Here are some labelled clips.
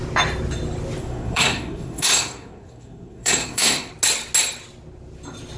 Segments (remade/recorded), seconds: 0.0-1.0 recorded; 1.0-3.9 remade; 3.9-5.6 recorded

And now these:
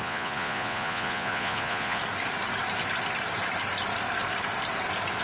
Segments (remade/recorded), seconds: 0.0-2.0 remade; 2.0-5.2 recorded

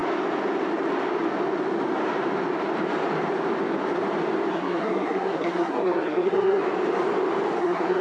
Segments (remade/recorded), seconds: 0.0-4.5 recorded; 4.5-6.6 remade; 6.6-7.6 recorded; 7.6-8.0 remade

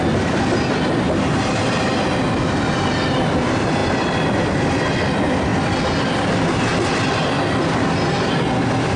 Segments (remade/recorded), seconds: 0.0-9.0 recorded

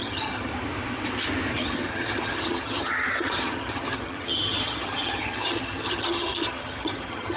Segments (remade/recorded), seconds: 0.0-0.5 remade; 0.5-1.5 recorded; 1.5-7.4 remade

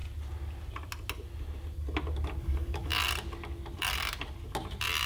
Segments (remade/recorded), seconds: 0.0-2.4 recorded; 2.4-2.9 remade; 2.9-5.1 recorded